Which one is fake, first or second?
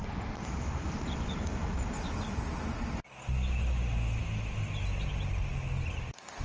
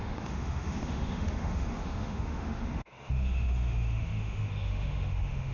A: second